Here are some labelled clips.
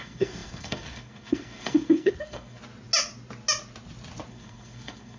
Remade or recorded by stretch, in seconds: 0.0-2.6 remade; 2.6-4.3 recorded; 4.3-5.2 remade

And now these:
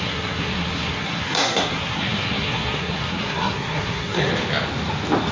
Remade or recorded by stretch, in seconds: 0.0-4.3 remade; 4.3-5.3 recorded